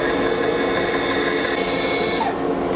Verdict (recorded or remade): recorded